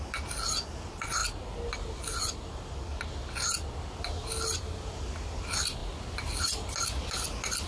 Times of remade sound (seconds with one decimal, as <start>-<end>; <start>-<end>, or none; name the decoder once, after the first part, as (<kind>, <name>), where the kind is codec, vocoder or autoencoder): none